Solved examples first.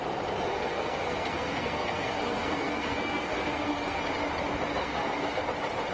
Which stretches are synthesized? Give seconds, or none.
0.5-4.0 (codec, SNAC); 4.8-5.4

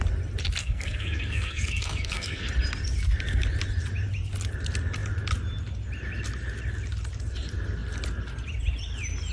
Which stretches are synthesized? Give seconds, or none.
0.6-2.5 (codec, SNAC)

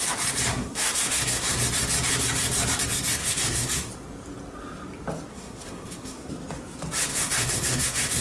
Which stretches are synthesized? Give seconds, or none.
0.5-1.6 (codec, SNAC); 3.2-3.9; 5.3-6.3; 7.1-8.2

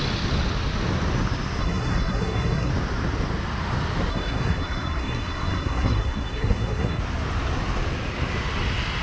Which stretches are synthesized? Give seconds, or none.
1.6-2.7 (codec, SNAC); 4.1-7.0

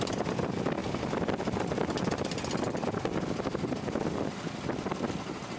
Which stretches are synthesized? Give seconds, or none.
none

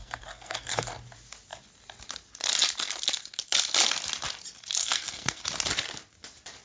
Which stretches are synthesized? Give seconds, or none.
0.0-0.9 (codec, SNAC); 4.8-5.4